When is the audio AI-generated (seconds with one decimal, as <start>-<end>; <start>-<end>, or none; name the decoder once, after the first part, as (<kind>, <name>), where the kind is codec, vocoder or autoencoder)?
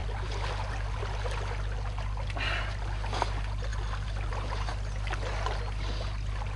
none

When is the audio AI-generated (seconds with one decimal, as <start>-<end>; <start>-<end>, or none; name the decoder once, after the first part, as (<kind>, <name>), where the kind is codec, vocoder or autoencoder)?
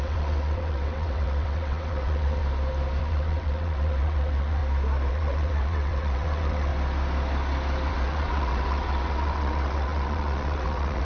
0.0-2.4 (vocoder, WaveNeXt); 3.0-4.6; 5.1-6.7; 7.9-11.0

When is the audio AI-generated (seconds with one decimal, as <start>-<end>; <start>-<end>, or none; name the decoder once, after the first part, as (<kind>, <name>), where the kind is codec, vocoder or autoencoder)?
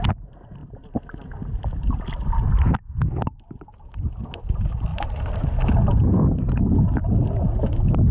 none